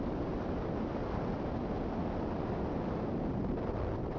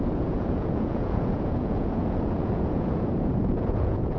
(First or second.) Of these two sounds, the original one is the first